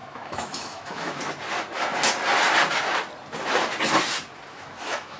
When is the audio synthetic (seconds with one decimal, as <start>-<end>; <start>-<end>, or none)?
0.0-1.2; 4.5-5.2